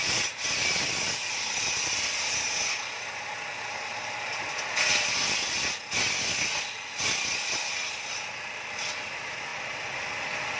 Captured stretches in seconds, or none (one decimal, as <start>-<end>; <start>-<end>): 0.0-10.6